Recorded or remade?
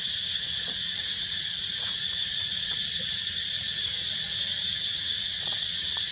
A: remade